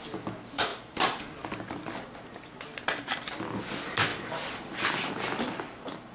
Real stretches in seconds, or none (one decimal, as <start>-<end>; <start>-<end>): 0.0-0.7; 1.3-4.1; 5.1-6.1